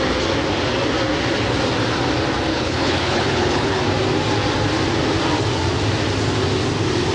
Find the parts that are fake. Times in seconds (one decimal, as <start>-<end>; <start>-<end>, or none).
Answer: 2.5-3.8